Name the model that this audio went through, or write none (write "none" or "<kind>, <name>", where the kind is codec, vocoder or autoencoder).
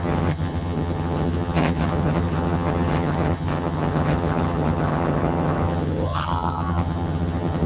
vocoder, HiFi-GAN